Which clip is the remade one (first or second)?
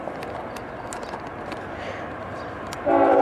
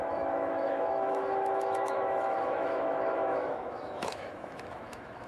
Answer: second